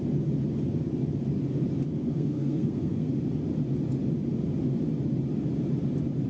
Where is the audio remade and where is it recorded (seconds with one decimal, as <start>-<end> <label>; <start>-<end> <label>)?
0.0-2.0 recorded; 2.0-3.1 remade; 3.1-6.3 recorded